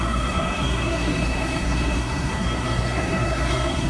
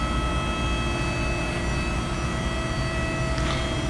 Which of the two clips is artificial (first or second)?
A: first